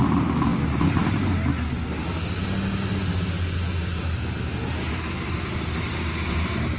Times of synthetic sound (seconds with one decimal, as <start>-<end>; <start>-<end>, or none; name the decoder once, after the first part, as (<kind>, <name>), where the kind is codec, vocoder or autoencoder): none